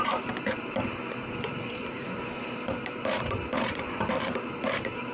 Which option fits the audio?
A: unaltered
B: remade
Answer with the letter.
B